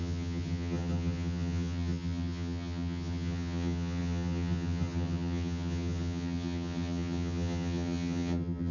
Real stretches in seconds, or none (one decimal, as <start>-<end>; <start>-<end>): none